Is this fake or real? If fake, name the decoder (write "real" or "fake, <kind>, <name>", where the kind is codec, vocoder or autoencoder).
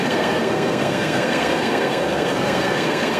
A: fake, codec, SNAC